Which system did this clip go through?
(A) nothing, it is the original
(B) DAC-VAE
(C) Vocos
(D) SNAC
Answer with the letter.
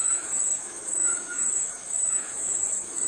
B